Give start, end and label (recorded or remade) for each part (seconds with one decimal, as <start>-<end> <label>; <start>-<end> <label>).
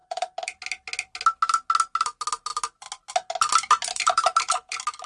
0.0-0.6 remade; 0.6-3.5 recorded; 3.5-4.5 remade; 4.5-5.1 recorded